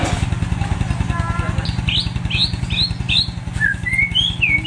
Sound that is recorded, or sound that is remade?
recorded